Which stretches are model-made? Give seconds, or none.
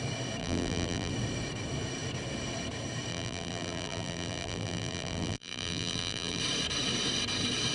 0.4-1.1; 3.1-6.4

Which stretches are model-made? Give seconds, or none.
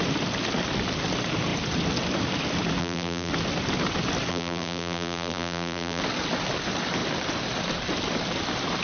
2.8-3.3; 4.3-6.0